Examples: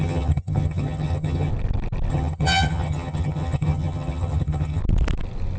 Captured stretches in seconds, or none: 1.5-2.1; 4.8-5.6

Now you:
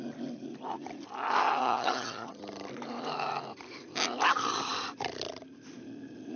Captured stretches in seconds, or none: 0.0-1.6; 2.4-6.4

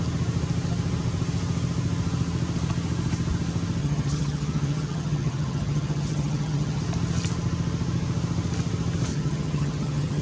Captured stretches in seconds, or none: 0.0-3.8; 6.8-9.1

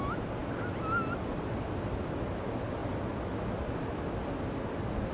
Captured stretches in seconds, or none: 0.0-5.1

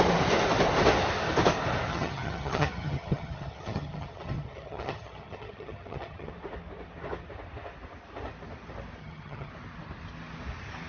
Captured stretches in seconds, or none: 0.0-1.9; 6.3-9.0; 9.5-10.9

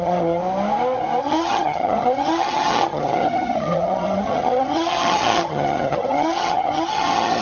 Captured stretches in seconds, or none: 0.4-1.2